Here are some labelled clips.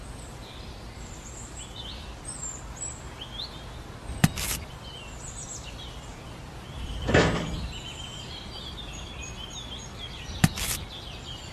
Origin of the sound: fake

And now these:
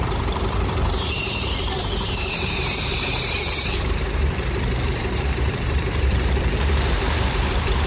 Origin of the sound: fake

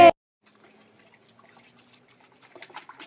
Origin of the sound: real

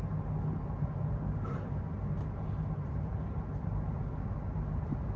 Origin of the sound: real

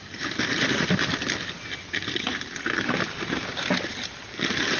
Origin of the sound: fake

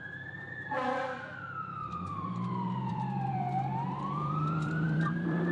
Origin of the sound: fake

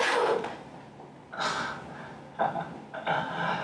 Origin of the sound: real